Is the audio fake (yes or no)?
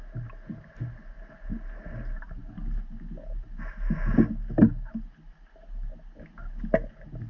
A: no